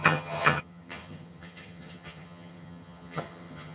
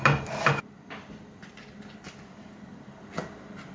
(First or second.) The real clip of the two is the second